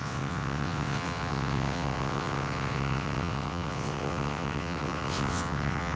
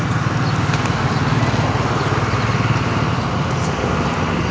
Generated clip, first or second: first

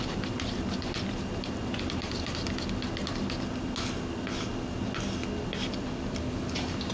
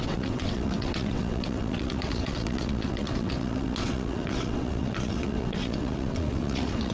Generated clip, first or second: second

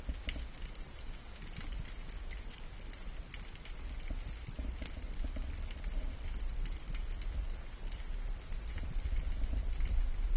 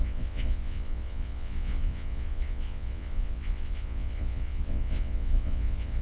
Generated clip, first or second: second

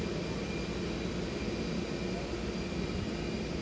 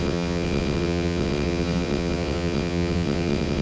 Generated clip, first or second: second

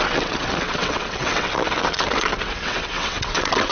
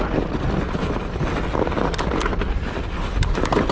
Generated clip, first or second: first